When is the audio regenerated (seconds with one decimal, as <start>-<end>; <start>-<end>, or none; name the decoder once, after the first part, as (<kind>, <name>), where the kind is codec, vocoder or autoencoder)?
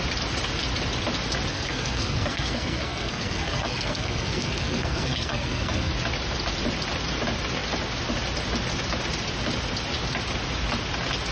1.5-5.9 (codec, SNAC)